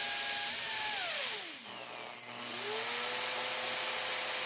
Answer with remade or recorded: recorded